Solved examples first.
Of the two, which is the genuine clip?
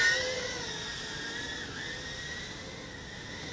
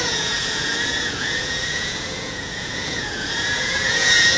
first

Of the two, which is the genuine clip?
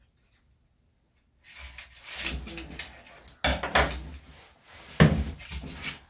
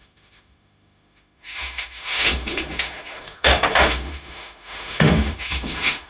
first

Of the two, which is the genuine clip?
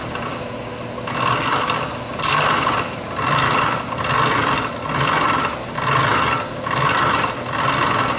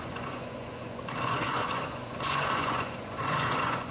first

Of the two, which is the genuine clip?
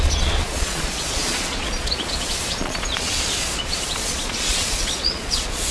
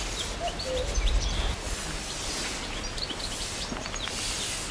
second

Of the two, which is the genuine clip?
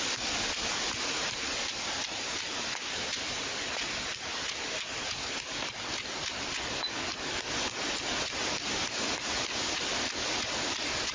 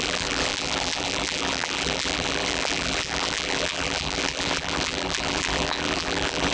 first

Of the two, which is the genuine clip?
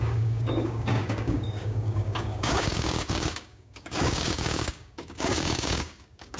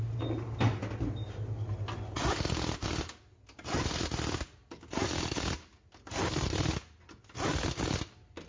second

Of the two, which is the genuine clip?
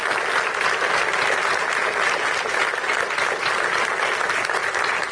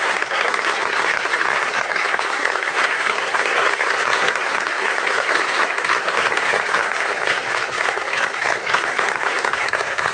first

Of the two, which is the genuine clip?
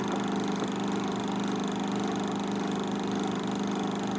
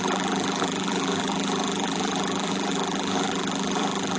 first